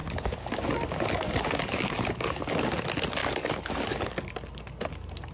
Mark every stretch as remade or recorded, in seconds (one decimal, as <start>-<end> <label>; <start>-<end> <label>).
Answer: 0.0-2.8 remade; 2.8-3.2 recorded; 3.2-4.3 remade; 4.3-5.3 recorded